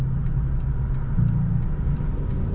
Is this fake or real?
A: real